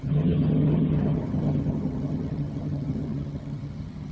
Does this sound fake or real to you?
fake